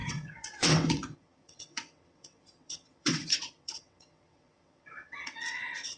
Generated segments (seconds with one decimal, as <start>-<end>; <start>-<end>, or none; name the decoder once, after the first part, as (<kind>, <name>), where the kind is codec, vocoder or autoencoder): 0.0-6.0 (vocoder, WaveNeXt)